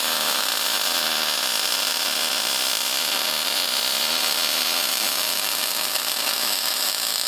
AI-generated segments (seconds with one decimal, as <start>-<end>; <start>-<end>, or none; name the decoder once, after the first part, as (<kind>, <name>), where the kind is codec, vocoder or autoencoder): 0.0-0.5 (autoencoder, DAC-VAE); 4.9-7.3